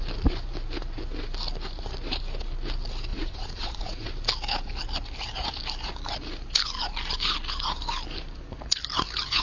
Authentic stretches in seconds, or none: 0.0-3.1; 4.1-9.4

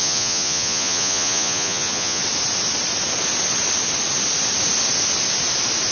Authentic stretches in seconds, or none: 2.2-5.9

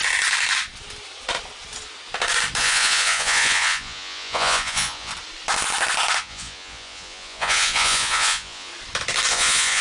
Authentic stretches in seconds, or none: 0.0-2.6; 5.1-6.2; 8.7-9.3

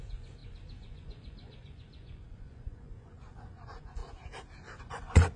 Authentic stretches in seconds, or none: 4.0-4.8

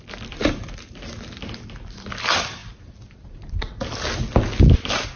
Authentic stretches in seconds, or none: 0.0-5.2

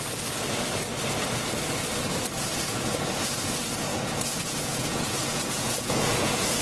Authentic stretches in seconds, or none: 0.0-2.7; 3.3-3.9

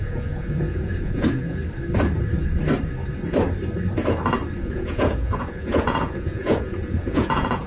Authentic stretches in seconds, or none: 1.6-4.6